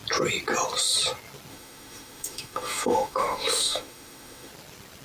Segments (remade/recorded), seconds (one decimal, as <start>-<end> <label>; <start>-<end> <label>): 0.0-1.5 recorded; 1.5-4.5 remade; 4.5-5.0 recorded